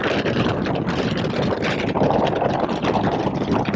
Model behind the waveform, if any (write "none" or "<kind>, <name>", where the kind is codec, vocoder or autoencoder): none